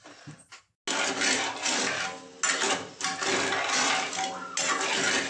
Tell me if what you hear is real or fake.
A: real